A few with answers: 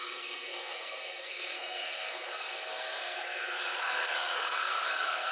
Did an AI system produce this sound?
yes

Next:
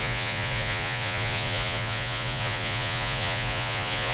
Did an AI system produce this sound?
yes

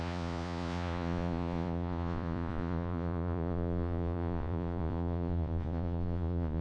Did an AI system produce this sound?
yes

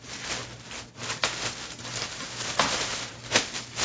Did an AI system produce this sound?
no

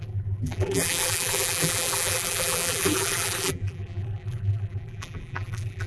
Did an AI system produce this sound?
yes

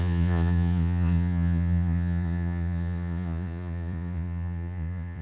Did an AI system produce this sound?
yes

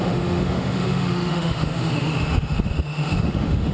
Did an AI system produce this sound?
yes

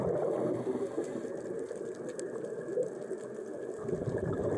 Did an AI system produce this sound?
no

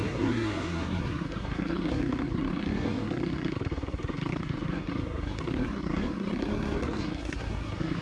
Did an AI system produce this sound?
yes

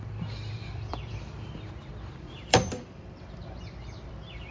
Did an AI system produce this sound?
yes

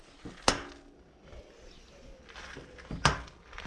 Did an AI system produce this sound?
no